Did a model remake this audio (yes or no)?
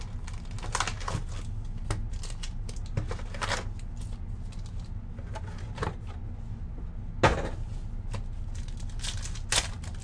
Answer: no